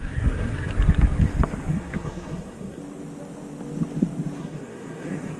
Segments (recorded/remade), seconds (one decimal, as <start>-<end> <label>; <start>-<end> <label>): 0.0-0.7 remade; 0.7-1.7 recorded; 1.7-2.8 remade; 2.8-4.4 recorded; 4.4-5.4 remade